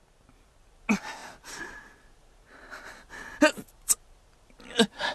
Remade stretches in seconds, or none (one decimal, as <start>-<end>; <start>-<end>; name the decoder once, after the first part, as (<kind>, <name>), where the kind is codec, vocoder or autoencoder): none